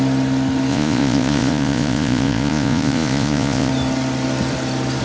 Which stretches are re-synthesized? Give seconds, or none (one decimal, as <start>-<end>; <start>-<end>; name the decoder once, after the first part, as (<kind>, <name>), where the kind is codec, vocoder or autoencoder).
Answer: 0.7-3.7 (vocoder, Vocos)